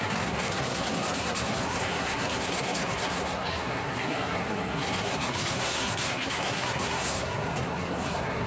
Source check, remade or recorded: remade